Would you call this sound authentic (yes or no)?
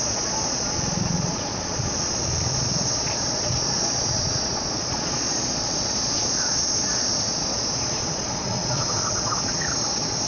no